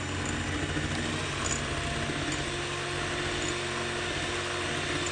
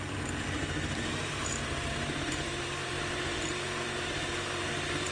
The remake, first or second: second